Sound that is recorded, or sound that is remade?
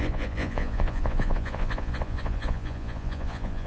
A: remade